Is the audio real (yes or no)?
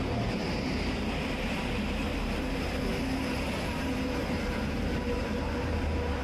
no